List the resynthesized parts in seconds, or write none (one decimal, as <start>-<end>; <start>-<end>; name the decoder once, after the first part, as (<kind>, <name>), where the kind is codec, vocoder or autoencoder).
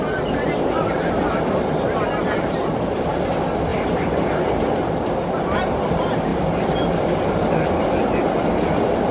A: 2.6-3.1 (vocoder, BigVGAN v2); 3.7-4.3; 6.3-7.3